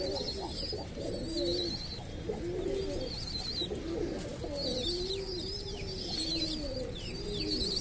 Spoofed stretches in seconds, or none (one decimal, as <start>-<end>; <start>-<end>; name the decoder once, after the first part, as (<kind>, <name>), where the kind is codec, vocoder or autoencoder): none